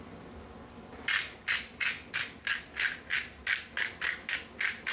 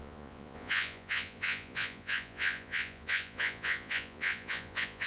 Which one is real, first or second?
first